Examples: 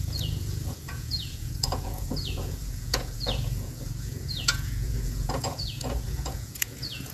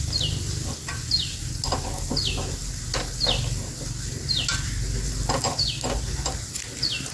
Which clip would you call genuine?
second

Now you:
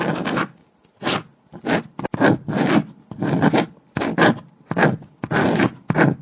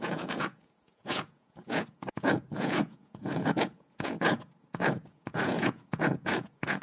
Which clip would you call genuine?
first